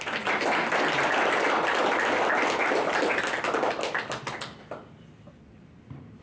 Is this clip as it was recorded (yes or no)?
yes